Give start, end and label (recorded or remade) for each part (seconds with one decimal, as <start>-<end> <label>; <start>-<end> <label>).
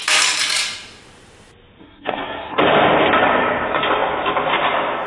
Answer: 0.0-1.8 recorded; 1.8-2.6 remade; 2.6-5.1 recorded